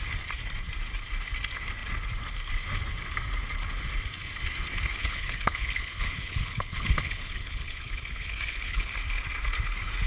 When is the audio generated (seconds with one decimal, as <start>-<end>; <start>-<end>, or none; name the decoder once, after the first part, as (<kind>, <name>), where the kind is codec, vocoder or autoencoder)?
5.0-8.9 (codec, HILCodec)